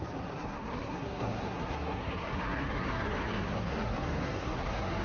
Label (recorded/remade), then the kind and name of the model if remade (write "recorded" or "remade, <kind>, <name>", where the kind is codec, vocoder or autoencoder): remade, codec, SNAC